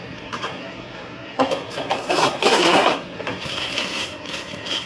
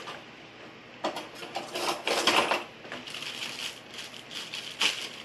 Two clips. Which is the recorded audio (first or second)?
second